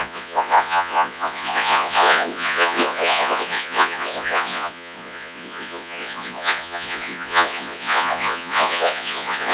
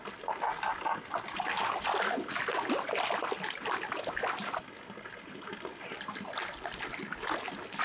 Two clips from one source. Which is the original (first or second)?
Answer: second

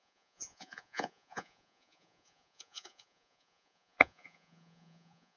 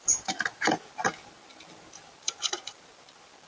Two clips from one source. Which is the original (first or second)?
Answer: second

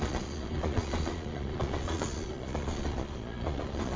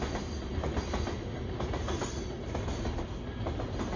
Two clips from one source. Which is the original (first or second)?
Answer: second